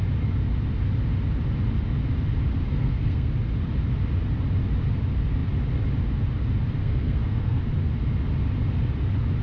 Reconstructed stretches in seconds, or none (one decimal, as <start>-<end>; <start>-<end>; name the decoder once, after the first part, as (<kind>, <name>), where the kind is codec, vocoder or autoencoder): 2.7-3.3 (codec, SNAC); 6.8-7.6